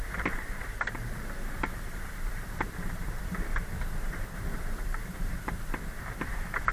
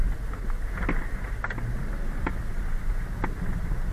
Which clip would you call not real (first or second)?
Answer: first